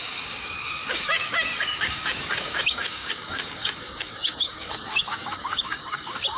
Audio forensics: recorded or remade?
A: remade